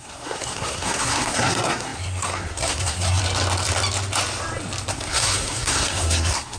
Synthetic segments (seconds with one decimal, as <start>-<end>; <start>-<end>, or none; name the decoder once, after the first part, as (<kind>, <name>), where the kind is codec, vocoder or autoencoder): 0.0-3.2 (codec, SNAC); 4.9-6.6